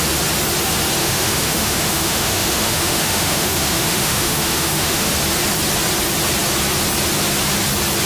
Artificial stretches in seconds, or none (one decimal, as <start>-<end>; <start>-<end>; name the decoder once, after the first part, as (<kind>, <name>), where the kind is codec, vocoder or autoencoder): 1.0-5.1 (autoencoder, DAC-VAE)